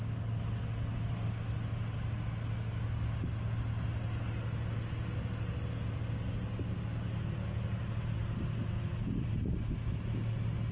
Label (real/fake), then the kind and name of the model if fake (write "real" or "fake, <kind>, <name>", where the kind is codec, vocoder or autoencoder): real